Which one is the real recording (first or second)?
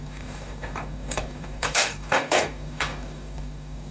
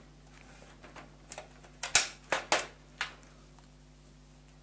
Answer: second